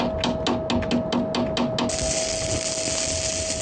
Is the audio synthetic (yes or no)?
no